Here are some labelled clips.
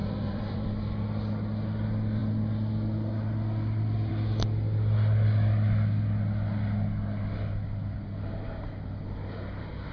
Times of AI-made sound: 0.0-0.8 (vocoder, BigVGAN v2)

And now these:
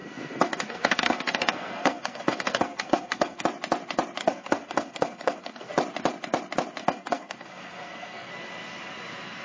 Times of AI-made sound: 0.0-3.4 (codec, SNAC); 4.2-5.7; 6.8-8.3

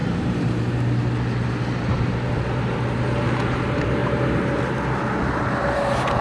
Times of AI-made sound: 0.0-0.6 (vocoder, BigVGAN v2); 4.0-4.6

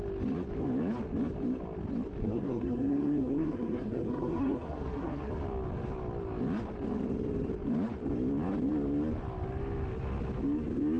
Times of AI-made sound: 2.2-5.3 (codec, SNAC)

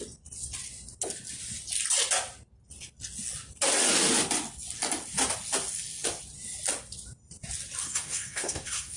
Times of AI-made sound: 7.8-9.0 (codec, SNAC)

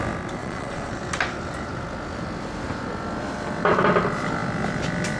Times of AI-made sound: 0.4-0.9 (vocoder, Vocos)